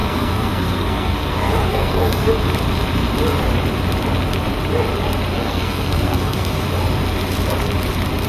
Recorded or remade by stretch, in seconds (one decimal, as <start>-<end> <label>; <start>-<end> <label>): 0.0-2.3 remade; 2.3-5.3 recorded; 5.3-6.5 remade; 6.5-8.3 recorded

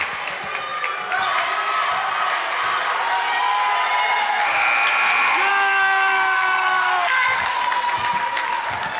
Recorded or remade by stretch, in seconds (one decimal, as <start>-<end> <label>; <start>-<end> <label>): 0.0-5.5 recorded; 5.5-7.6 remade; 7.6-9.0 recorded

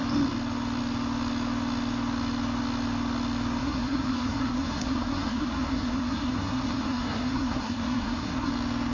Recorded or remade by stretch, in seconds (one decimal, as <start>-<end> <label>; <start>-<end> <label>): 0.0-3.6 recorded; 3.6-8.5 remade; 8.5-8.9 recorded

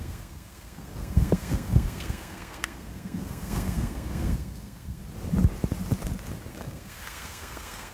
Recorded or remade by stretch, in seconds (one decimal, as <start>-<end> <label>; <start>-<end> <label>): 0.0-5.0 remade; 5.0-6.5 recorded; 6.5-7.9 remade

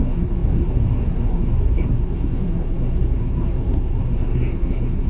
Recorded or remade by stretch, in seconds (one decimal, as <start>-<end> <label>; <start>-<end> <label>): 0.0-5.1 remade

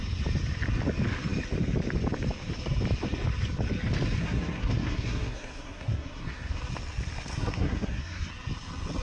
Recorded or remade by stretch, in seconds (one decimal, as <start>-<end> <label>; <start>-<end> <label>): 0.0-4.2 recorded; 4.2-6.6 remade; 6.6-7.3 recorded; 7.3-8.3 remade; 8.3-9.0 recorded